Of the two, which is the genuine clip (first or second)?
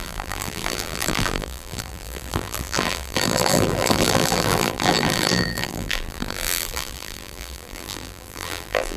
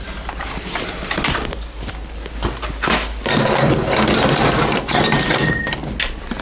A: second